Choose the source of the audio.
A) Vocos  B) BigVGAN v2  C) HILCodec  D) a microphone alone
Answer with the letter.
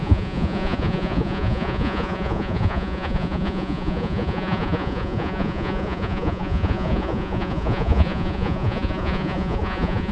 A